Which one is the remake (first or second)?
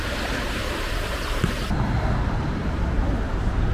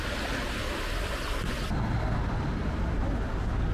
first